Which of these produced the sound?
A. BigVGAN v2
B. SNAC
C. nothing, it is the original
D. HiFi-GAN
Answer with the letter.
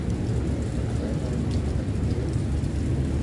C